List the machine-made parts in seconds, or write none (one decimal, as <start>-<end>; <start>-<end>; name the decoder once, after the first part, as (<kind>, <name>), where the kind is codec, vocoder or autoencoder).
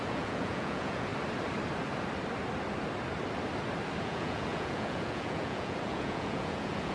0.0-1.1 (vocoder, Vocos); 4.0-6.9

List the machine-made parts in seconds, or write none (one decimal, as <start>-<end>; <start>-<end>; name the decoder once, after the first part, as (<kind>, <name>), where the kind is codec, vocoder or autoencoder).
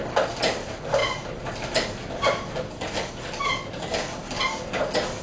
none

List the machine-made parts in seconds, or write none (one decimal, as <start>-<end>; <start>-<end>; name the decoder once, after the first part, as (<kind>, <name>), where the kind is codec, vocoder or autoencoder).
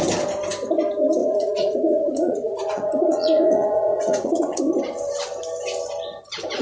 1.2-4.6 (vocoder, Vocos)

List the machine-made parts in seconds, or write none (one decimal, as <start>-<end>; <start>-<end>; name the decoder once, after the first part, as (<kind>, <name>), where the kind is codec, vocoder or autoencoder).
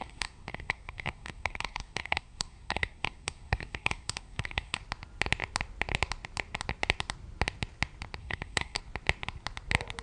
0.0-4.8 (codec, SNAC); 8.2-8.8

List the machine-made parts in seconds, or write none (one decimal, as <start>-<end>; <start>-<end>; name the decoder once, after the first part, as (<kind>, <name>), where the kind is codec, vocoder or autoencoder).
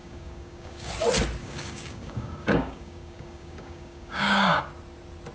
0.0-0.9 (codec, DAC); 1.4-4.6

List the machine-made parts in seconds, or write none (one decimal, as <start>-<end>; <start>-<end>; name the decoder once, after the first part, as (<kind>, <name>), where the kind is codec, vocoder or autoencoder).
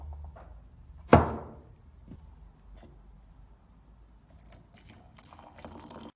none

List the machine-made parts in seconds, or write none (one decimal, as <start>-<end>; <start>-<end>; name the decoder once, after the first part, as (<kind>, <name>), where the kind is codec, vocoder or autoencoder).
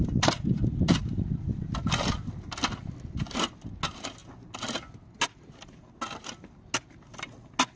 none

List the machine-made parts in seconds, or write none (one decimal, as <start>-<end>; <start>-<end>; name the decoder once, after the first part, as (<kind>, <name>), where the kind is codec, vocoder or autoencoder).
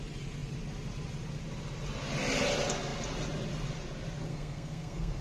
4.3-5.2 (codec, SNAC)